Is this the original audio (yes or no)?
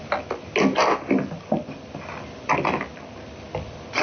yes